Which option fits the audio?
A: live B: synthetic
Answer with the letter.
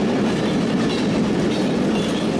A